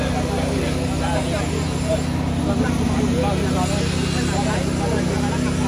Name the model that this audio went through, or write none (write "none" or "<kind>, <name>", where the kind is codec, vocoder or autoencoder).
none